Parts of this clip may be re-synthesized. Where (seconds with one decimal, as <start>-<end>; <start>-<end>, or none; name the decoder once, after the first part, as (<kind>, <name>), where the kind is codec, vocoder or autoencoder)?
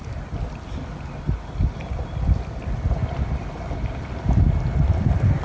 none